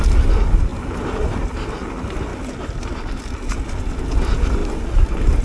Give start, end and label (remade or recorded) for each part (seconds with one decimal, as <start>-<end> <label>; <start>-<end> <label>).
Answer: 0.0-5.4 recorded